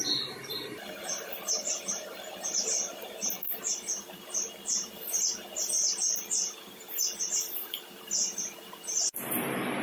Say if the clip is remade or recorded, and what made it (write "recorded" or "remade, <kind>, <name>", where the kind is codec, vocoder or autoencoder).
remade, vocoder, BigVGAN v2